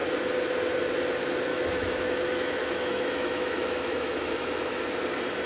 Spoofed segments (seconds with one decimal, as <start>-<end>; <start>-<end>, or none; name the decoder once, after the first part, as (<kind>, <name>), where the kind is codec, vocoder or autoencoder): 1.5-4.8 (autoencoder, DAC-VAE)